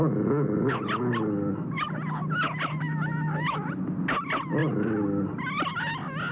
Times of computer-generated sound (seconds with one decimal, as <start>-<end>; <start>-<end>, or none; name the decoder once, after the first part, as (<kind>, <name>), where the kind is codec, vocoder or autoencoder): none